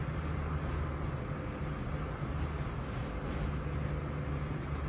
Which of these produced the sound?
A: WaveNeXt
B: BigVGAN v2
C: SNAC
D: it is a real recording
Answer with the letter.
D